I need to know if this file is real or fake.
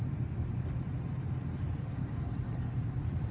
real